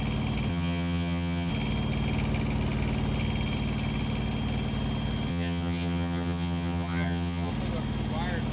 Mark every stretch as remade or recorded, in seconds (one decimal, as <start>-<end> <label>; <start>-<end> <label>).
0.0-0.5 recorded; 0.5-1.5 remade; 1.5-5.3 recorded; 5.3-7.5 remade; 7.5-8.5 recorded